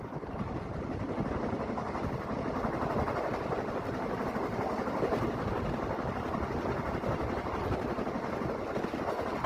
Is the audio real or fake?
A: real